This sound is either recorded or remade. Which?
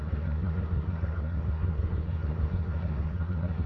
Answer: remade